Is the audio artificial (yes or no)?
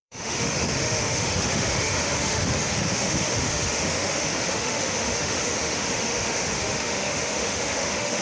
yes